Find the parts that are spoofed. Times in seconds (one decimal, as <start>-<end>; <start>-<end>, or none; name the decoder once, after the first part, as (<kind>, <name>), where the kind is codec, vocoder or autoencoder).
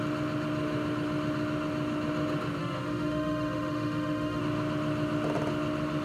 2.6-4.4 (autoencoder, DAC-VAE)